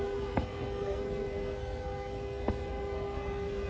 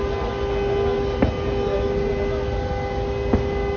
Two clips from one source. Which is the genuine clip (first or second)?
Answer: second